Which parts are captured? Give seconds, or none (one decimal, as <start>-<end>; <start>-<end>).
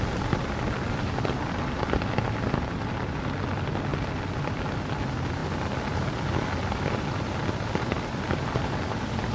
0.0-9.3